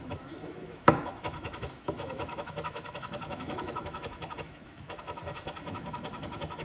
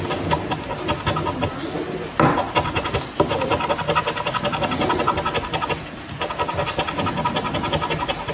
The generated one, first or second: first